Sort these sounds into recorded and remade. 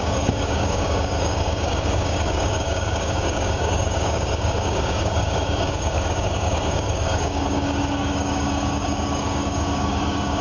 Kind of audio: remade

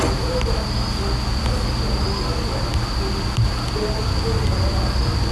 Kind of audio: recorded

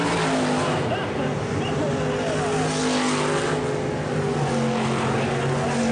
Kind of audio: recorded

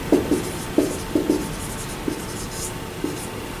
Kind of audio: recorded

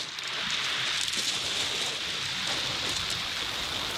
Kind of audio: recorded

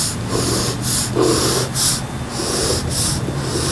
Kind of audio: recorded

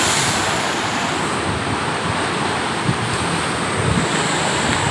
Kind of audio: recorded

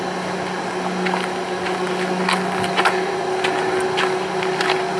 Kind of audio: recorded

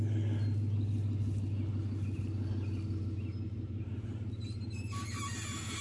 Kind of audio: recorded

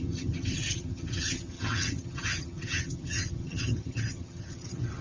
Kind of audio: remade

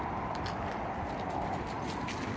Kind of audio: remade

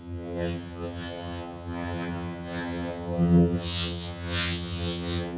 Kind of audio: remade